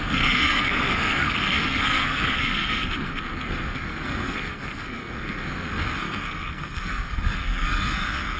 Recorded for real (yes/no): no